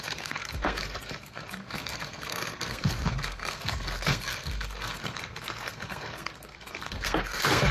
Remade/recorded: remade